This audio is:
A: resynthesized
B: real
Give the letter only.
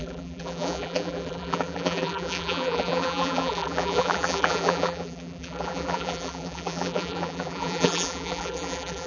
A